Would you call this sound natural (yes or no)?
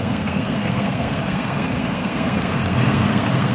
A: no